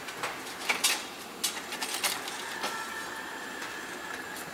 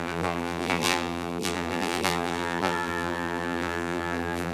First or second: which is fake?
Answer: second